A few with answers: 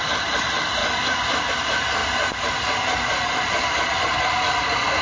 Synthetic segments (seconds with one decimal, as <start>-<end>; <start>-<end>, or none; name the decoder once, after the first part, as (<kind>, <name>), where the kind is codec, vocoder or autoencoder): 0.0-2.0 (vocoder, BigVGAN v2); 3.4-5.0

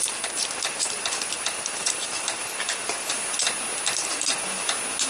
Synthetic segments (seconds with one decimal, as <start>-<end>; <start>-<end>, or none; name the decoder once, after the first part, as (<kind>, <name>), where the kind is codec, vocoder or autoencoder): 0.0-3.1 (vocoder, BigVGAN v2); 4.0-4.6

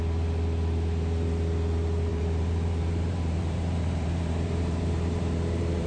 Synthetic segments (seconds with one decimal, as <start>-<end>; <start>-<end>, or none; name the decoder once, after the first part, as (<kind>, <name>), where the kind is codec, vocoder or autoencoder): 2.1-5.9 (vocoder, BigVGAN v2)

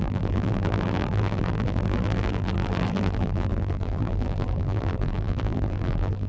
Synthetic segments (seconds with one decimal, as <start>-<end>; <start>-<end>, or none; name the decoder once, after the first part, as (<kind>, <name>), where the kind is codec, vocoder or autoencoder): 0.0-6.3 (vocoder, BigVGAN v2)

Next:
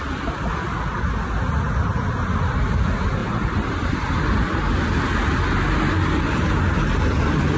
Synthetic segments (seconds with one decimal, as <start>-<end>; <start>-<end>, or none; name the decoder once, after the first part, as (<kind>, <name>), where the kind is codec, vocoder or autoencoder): 3.2-4.1 (vocoder, BigVGAN v2)

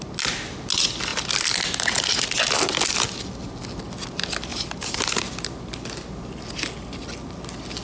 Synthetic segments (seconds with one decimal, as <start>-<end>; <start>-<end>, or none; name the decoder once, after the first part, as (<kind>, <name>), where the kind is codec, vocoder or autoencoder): 4.5-5.1 (vocoder, BigVGAN v2)

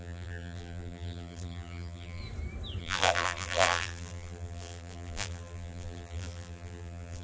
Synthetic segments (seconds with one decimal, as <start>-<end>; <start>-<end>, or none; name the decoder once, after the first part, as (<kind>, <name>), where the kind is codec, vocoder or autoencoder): 0.0-2.2 (vocoder, BigVGAN v2); 2.8-7.2